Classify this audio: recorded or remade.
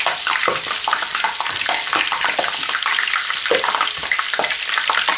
recorded